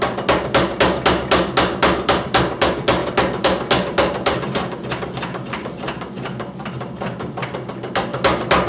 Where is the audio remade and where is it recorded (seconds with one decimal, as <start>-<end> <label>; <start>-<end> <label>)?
0.0-8.7 recorded